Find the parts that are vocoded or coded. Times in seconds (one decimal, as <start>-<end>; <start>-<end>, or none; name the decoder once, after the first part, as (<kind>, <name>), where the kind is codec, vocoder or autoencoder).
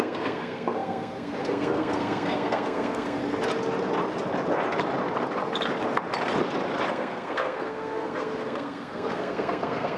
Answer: 0.0-3.2 (codec, SNAC); 6.9-10.0